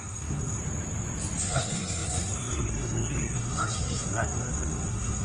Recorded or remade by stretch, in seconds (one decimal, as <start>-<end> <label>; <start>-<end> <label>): 0.0-0.6 remade; 0.6-1.4 recorded; 1.4-5.2 remade